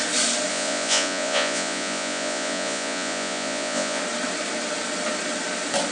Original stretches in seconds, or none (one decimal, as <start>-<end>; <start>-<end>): 0.0-0.5; 4.0-5.9